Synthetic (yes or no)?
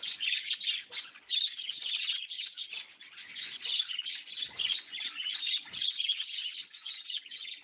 yes